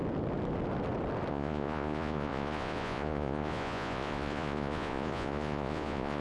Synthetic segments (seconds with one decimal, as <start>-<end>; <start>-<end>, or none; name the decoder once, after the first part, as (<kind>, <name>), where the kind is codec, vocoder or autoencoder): 1.3-6.2 (vocoder, Vocos)